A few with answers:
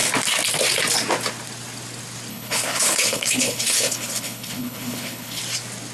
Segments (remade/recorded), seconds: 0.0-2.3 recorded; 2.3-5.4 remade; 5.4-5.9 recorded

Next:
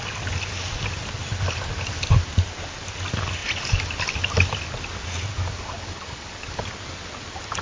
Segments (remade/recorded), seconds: 0.0-5.3 recorded; 5.3-6.6 remade; 6.6-7.6 recorded

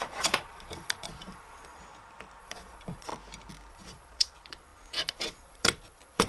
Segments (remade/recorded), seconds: 0.0-1.8 remade; 1.8-2.4 recorded; 2.4-3.1 remade; 3.1-3.7 recorded; 3.7-6.3 remade